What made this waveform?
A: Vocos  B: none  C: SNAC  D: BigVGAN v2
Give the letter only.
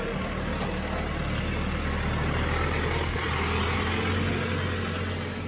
B